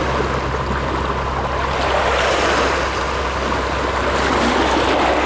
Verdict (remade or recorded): recorded